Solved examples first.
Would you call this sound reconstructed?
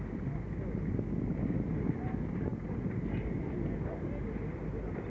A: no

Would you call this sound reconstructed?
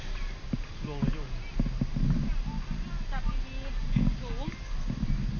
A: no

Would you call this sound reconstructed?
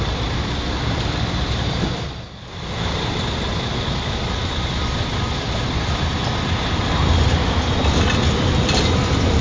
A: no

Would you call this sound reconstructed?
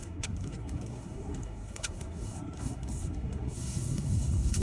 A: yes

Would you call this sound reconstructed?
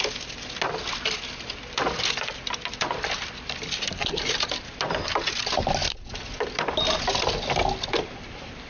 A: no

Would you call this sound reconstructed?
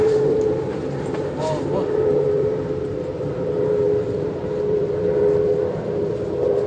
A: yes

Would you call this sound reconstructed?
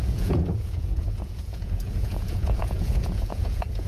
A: yes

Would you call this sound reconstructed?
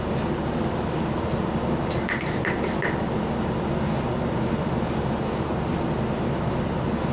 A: no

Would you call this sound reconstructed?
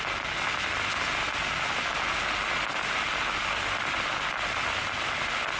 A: no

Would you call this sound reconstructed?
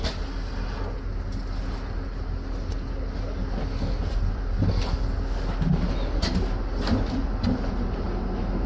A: no